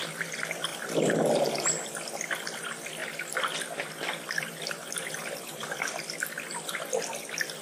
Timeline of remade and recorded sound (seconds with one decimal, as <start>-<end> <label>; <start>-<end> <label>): 0.0-0.7 recorded; 0.7-1.5 remade; 1.5-3.0 recorded; 3.0-6.7 remade; 6.7-7.6 recorded